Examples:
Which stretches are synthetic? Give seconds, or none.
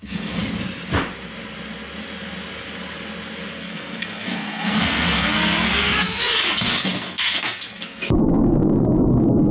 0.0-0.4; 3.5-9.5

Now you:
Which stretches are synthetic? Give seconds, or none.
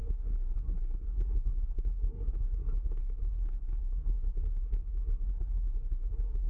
0.0-6.5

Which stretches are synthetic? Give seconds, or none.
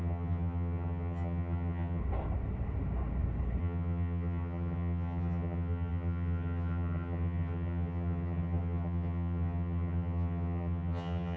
0.0-2.0; 3.6-11.4